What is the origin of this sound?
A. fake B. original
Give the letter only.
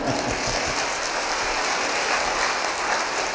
B